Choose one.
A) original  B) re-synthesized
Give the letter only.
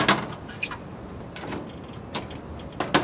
A